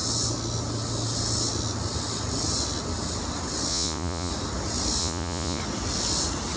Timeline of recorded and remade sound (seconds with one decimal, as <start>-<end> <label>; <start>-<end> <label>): 0.0-3.7 recorded; 3.7-4.3 remade; 4.3-5.0 recorded; 5.0-5.6 remade; 5.6-6.6 recorded